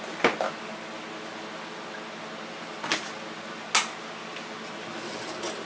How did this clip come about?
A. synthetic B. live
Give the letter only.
B